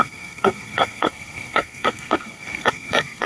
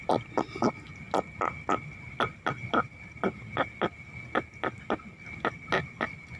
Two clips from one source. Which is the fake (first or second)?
first